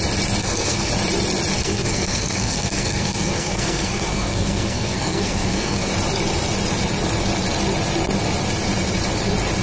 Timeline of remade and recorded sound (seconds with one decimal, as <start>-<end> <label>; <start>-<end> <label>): 0.0-0.4 recorded; 0.4-0.9 remade; 0.9-1.6 recorded; 1.6-5.9 remade; 5.9-9.6 recorded